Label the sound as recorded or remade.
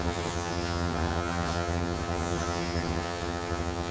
remade